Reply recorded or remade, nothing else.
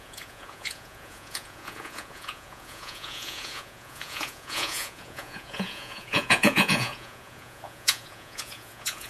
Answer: remade